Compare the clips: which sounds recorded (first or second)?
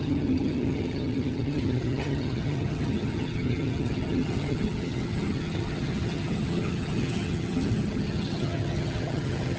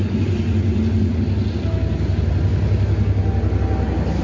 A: second